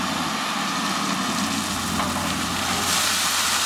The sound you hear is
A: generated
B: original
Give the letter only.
B